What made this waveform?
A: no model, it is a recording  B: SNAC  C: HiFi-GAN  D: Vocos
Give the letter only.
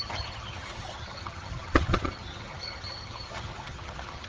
C